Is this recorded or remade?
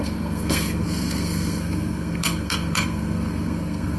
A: remade